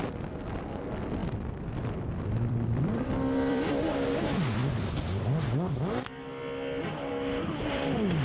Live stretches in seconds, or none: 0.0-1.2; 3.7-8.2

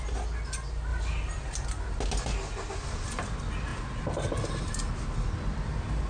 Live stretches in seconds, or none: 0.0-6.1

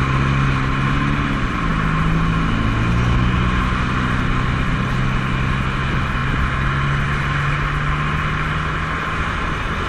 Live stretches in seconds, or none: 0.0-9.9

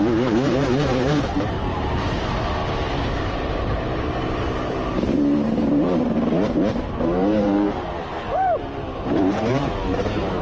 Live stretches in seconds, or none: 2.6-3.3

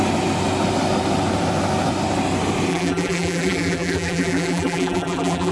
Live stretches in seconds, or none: 0.0-2.7